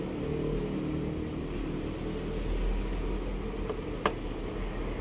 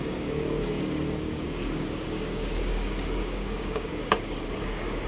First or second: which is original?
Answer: first